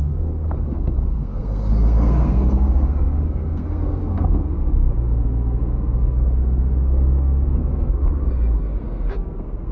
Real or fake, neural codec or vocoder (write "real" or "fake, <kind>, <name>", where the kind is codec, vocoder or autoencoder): fake, codec, SNAC